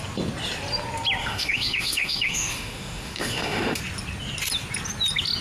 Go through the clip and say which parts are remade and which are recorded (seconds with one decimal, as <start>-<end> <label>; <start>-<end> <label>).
0.0-1.2 recorded; 1.2-3.8 remade; 3.8-5.4 recorded